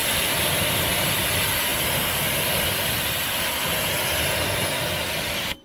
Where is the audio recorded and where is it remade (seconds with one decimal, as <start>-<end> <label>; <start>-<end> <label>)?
0.0-5.6 recorded

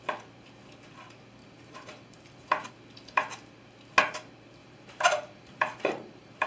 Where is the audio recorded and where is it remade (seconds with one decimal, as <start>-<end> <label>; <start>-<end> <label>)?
0.0-1.4 recorded; 1.4-2.7 remade; 2.7-4.6 recorded; 4.6-6.5 remade